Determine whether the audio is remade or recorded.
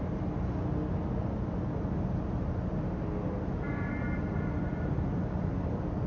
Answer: recorded